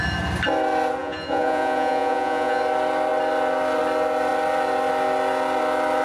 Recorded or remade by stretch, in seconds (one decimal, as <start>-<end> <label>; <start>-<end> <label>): 0.0-1.0 recorded; 1.0-2.6 remade; 2.6-6.0 recorded